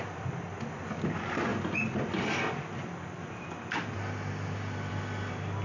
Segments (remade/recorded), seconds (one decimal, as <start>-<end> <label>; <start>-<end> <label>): 0.0-5.6 recorded